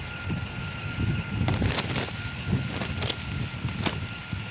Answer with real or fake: real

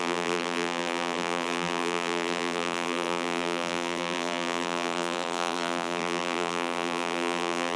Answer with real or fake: fake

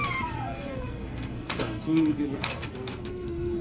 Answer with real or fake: fake